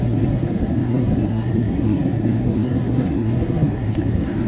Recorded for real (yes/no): no